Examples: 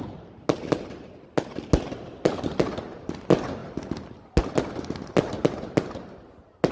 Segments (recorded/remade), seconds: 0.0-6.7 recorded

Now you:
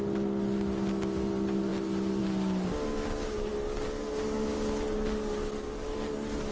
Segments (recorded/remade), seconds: 0.0-6.5 recorded

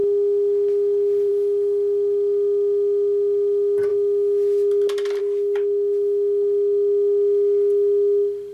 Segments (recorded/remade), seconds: 0.0-8.5 recorded

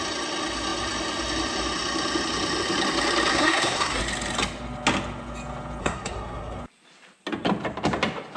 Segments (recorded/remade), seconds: 0.0-3.3 recorded; 3.3-4.0 remade; 4.0-5.8 recorded; 5.8-6.6 remade; 6.6-8.4 recorded